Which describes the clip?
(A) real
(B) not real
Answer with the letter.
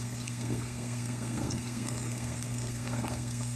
B